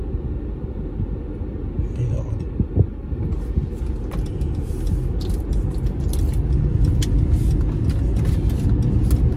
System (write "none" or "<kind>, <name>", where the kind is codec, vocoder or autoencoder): none